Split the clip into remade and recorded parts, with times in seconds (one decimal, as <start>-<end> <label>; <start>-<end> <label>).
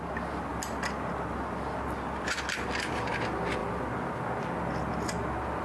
0.0-5.6 recorded